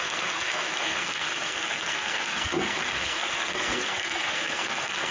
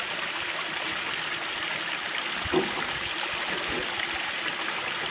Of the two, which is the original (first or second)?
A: second